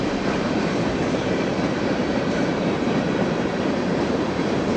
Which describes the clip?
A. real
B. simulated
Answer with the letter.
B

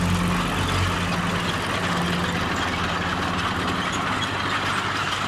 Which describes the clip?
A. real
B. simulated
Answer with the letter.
A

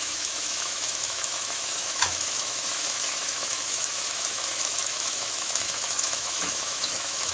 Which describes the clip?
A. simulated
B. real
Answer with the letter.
A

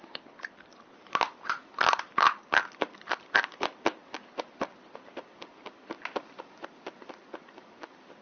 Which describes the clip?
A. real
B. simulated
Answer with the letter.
A